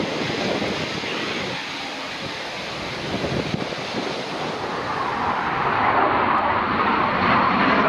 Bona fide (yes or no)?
yes